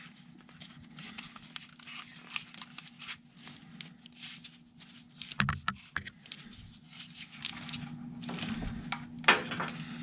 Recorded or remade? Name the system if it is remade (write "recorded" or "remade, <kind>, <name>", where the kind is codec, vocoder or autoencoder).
recorded